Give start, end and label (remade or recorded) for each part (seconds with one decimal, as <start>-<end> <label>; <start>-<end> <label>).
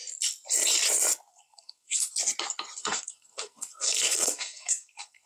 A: 0.0-1.3 recorded; 1.3-2.1 remade; 2.1-2.8 recorded; 2.8-5.3 remade